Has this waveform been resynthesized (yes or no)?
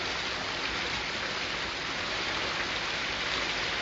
no